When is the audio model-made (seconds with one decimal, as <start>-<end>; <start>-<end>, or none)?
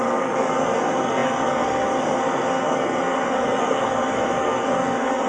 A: 0.0-5.3